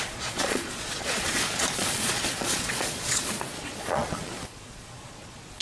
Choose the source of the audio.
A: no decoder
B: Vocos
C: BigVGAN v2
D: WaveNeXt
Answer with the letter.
B